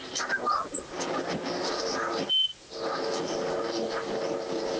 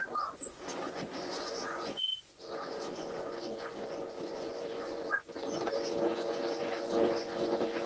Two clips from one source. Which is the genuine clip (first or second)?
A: first